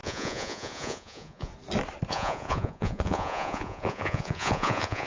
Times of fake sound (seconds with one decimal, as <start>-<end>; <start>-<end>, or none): 0.0-1.5; 2.1-5.1